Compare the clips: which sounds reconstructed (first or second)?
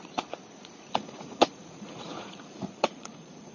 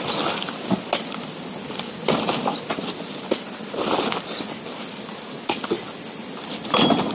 first